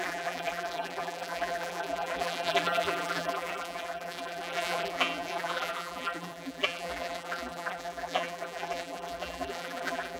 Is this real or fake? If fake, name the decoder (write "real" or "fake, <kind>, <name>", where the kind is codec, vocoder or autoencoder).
fake, vocoder, BigVGAN v2